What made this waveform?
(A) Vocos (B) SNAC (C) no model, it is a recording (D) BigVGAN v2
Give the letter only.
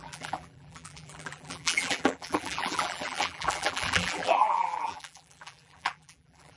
D